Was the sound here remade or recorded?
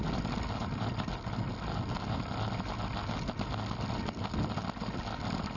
recorded